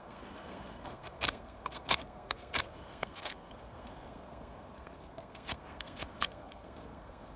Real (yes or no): no